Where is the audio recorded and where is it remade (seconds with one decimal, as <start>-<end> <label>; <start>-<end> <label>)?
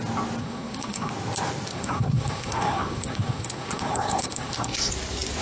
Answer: 0.0-0.4 recorded; 0.4-1.1 remade; 1.1-1.7 recorded; 1.7-4.9 remade; 4.9-5.4 recorded